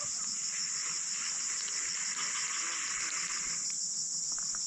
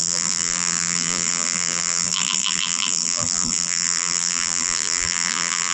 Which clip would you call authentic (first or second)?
first